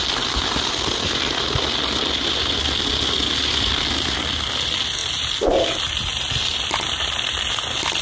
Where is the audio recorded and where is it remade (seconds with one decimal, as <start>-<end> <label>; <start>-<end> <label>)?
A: 0.0-8.0 recorded